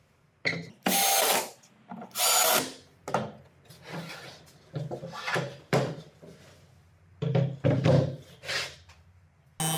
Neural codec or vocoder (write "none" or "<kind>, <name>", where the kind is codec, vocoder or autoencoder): none